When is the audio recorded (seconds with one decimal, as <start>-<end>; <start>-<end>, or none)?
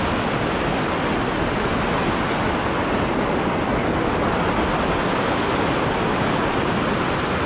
0.0-7.5